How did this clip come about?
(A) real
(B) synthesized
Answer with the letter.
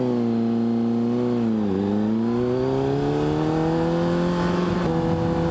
A